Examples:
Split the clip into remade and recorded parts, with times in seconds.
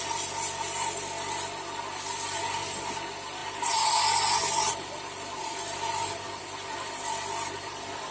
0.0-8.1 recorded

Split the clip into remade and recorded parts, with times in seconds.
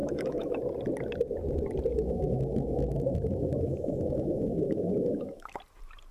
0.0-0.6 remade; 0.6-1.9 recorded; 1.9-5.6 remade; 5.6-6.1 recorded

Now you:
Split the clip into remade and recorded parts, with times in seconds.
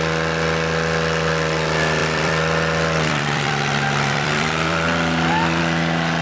0.0-2.0 recorded; 2.0-5.6 remade; 5.6-6.2 recorded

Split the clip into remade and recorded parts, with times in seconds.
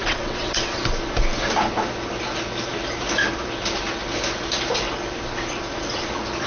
0.0-0.8 remade; 0.8-6.5 recorded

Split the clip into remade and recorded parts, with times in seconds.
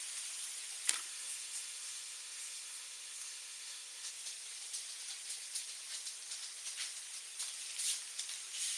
0.0-1.1 recorded; 1.1-4.1 remade; 4.1-8.8 recorded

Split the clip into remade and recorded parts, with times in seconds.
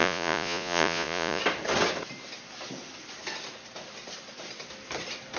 0.0-1.4 remade; 1.4-5.4 recorded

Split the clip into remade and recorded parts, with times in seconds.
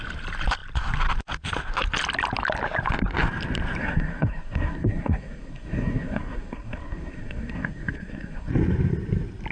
0.0-3.8 recorded; 3.8-8.5 remade; 8.5-9.5 recorded